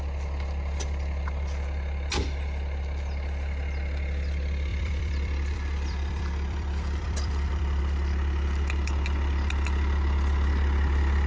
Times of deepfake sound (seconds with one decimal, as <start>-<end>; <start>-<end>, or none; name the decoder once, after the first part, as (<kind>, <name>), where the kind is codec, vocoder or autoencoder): 4.7-7.8 (vocoder, BigVGAN v2)